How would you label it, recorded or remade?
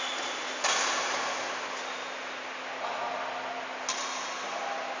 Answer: recorded